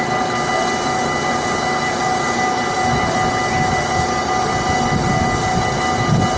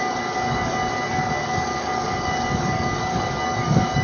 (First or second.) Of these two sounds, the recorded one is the first